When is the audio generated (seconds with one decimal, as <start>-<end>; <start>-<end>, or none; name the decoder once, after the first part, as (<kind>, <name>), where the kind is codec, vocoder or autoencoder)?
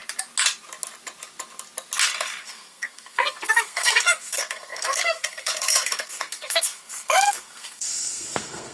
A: 2.4-8.7 (codec, SNAC)